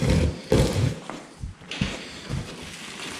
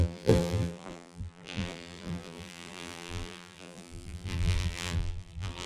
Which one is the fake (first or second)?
second